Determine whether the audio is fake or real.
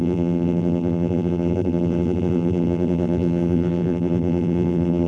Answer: fake